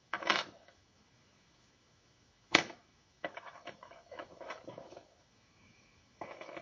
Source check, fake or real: fake